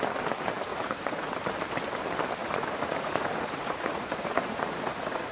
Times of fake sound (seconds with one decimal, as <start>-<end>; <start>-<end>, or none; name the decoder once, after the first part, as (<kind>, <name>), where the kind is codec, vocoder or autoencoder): 0.7-1.3 (vocoder, Vocos); 2.4-5.3

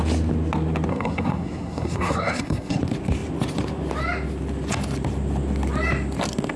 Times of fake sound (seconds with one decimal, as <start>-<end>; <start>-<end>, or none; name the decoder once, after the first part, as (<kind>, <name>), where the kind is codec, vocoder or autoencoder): 0.9-2.8 (codec, SNAC)

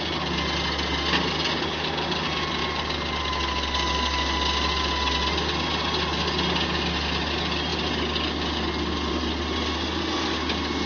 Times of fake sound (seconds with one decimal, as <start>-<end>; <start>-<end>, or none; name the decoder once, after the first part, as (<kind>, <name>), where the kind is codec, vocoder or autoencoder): none

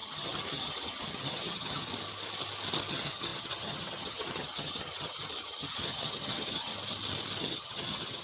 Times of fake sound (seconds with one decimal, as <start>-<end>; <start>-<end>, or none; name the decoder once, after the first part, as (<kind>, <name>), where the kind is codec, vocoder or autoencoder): 0.0-1.9 (vocoder, HiFi-GAN); 2.9-6.7; 7.4-8.2

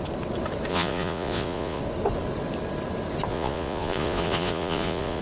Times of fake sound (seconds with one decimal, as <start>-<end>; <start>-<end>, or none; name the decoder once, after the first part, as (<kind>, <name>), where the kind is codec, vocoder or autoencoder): 0.7-1.8 (vocoder, Vocos); 3.3-5.2

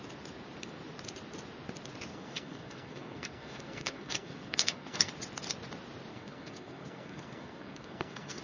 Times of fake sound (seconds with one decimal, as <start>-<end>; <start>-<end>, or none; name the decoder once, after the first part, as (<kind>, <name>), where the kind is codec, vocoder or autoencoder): 2.1-5.1 (codec, SNAC); 6.1-8.4

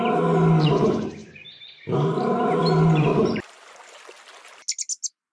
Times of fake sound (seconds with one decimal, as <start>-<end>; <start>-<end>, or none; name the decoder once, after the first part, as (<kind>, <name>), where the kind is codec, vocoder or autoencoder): 1.2-4.0 (vocoder, BigVGAN v2)

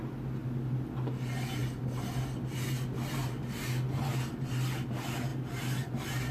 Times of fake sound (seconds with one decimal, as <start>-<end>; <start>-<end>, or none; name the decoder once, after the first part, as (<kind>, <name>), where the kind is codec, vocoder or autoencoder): none